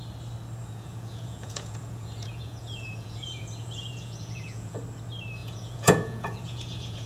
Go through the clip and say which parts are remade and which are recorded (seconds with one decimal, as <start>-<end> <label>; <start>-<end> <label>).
0.0-0.6 recorded; 0.6-4.8 remade; 4.8-5.4 recorded; 5.4-7.1 remade